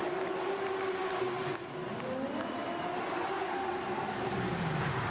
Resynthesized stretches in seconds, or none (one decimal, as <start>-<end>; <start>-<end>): none